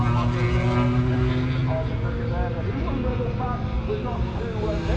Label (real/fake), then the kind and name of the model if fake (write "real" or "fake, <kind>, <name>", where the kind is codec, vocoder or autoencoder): real